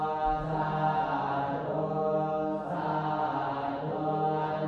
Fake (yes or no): no